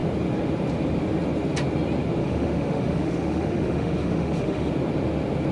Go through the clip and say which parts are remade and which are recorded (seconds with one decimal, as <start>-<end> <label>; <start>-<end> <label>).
0.0-2.2 recorded; 2.2-4.7 remade; 4.7-5.5 recorded